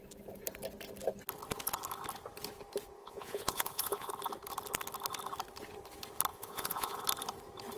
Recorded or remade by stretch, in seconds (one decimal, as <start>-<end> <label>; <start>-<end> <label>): 0.0-3.0 recorded; 3.0-4.1 remade; 4.1-6.3 recorded; 6.3-7.0 remade; 7.0-7.8 recorded